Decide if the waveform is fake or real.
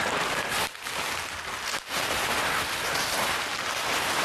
fake